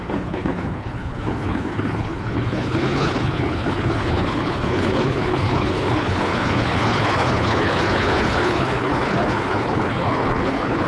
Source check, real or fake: fake